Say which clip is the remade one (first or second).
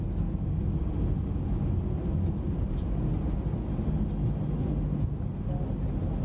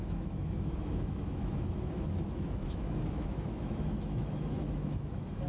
second